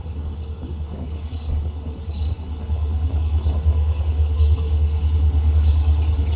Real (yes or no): no